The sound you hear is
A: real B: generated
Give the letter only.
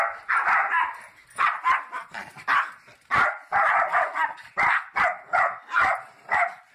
A